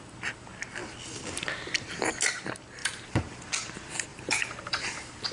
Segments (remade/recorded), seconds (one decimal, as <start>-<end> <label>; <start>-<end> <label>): 0.0-2.8 recorded; 2.8-3.3 remade; 3.3-4.1 recorded; 4.1-4.8 remade; 4.8-5.3 recorded